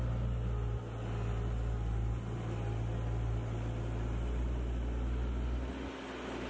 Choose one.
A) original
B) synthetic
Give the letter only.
A